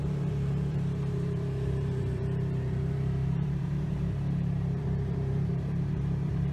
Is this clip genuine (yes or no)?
no